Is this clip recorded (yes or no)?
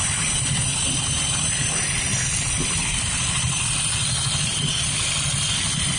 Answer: no